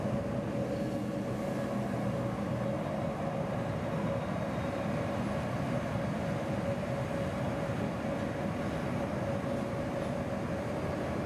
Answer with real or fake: real